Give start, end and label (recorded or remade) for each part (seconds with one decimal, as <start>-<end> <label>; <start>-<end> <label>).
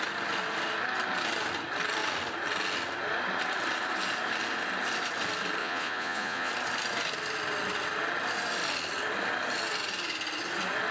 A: 0.0-5.6 recorded; 5.6-6.5 remade; 6.5-10.9 recorded